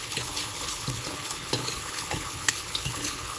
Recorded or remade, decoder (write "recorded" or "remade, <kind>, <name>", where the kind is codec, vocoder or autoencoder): remade, codec, HILCodec